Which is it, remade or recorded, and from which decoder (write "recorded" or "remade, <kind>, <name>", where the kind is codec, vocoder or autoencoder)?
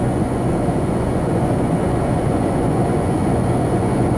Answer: remade, vocoder, Vocos